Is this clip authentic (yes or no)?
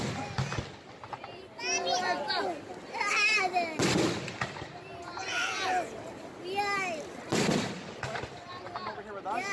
yes